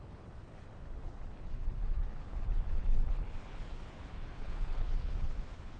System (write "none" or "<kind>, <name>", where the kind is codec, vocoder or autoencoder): codec, HILCodec